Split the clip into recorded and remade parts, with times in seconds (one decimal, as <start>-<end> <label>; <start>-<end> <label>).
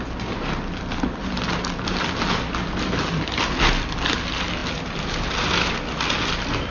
0.0-6.7 recorded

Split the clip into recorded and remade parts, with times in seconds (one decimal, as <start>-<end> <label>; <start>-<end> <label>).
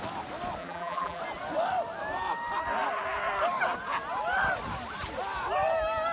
0.0-0.6 recorded; 0.6-1.2 remade; 1.2-6.1 recorded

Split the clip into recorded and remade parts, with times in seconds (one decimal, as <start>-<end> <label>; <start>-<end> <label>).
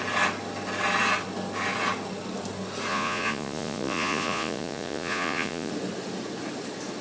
0.0-2.9 recorded; 2.9-5.7 remade; 5.7-7.0 recorded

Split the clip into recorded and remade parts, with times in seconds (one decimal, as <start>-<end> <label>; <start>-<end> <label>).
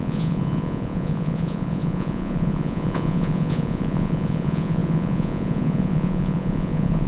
0.0-7.1 remade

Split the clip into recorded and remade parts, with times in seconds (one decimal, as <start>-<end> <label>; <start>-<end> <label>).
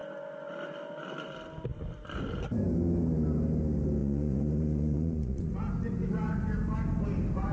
0.0-4.0 recorded; 4.0-5.6 remade; 5.6-7.5 recorded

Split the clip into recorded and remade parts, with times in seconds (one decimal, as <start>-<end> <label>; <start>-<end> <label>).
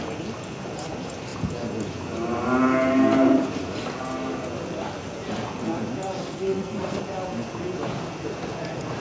0.0-6.2 recorded; 6.2-7.0 remade; 7.0-9.0 recorded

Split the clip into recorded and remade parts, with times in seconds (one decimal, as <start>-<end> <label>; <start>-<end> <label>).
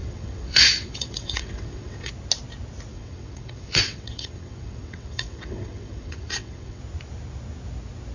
0.0-2.1 remade; 2.1-2.9 recorded; 2.9-6.8 remade; 6.8-8.1 recorded